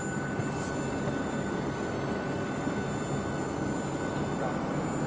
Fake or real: real